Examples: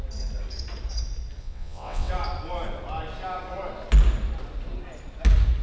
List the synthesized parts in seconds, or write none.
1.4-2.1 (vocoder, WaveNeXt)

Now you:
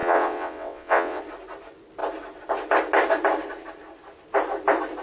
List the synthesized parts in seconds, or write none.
0.0-1.2 (vocoder, WaveNeXt)